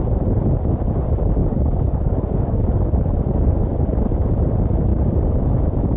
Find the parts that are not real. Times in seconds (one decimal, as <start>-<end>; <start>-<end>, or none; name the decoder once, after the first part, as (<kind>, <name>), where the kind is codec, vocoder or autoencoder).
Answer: 1.4-4.3 (codec, DAC)